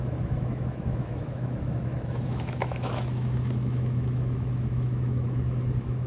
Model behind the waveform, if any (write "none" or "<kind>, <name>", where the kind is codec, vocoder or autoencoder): autoencoder, DAC-VAE